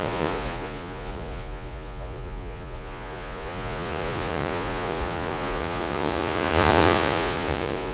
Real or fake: fake